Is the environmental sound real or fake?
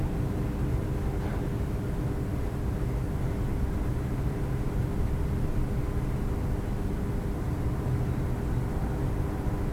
real